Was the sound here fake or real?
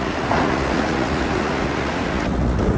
fake